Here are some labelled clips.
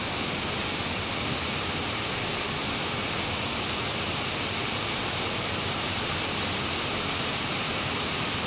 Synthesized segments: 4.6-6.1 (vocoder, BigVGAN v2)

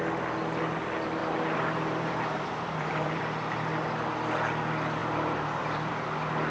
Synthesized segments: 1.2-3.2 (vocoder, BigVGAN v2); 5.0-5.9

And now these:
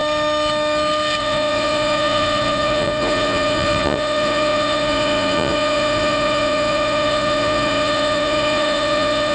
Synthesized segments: 1.2-9.3 (vocoder, Vocos)

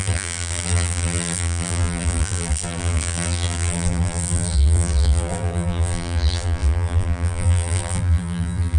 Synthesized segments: 0.0-8.8 (vocoder, BigVGAN v2)

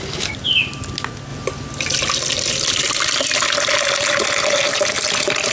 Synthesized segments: none